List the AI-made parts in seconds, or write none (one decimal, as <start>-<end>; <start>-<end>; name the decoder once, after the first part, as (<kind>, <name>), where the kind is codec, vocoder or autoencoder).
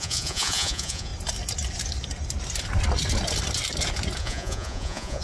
0.0-1.1 (vocoder, Vocos); 4.2-5.2